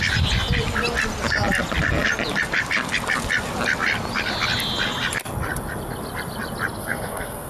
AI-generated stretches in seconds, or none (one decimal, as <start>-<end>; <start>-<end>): 6.8-7.5